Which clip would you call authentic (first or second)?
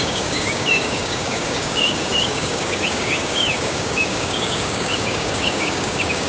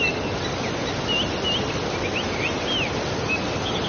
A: second